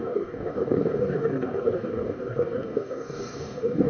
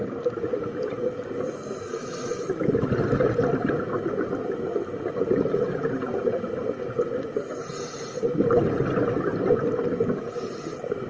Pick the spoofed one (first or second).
first